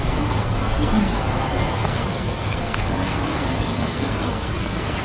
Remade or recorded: remade